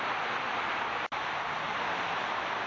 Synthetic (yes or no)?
no